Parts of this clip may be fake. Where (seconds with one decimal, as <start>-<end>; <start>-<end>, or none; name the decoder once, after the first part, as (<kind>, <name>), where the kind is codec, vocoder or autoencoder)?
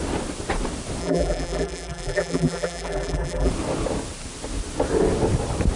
1.0-3.5 (vocoder, BigVGAN v2)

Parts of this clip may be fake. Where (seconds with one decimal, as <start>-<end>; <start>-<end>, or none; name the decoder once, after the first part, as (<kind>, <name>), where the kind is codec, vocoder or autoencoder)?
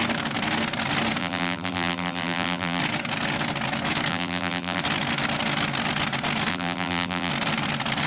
1.2-2.8 (vocoder, BigVGAN v2); 4.1-4.8; 6.5-7.3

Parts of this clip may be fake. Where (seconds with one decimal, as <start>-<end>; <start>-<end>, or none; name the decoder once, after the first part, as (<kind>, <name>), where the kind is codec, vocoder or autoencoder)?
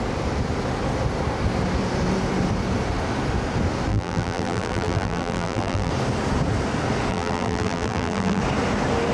3.9-5.9 (vocoder, BigVGAN v2); 7.1-8.4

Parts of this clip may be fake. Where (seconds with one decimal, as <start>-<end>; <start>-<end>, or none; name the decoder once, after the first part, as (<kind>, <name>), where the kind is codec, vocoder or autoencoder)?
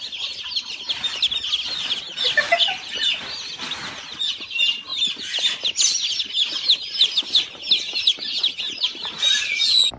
4.9-6.2 (vocoder, BigVGAN v2)